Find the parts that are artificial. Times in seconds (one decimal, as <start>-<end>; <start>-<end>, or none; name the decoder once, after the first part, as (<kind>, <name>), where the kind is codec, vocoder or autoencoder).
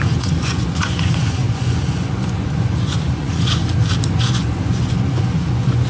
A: 0.0-3.6 (vocoder, Vocos); 4.2-5.9